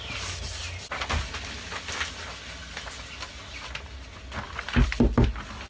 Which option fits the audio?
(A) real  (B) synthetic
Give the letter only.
A